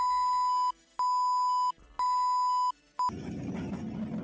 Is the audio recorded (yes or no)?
yes